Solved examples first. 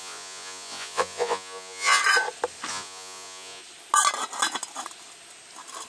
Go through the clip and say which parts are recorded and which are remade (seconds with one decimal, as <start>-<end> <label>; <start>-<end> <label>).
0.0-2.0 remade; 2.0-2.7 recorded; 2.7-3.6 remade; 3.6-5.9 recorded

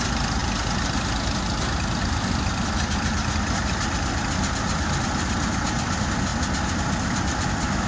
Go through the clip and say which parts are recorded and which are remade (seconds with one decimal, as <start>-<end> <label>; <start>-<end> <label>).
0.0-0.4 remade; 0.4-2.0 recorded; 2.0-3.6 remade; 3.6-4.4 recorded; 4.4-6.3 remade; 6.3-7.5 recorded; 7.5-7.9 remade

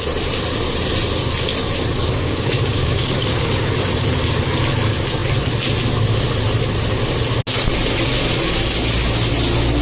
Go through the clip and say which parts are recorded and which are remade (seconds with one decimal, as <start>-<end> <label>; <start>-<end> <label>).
0.0-2.0 recorded; 2.0-3.7 remade; 3.7-9.8 recorded